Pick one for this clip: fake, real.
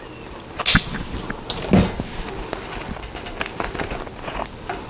real